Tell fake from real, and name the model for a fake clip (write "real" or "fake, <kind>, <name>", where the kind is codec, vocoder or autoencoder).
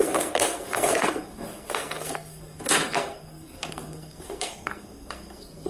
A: fake, codec, SNAC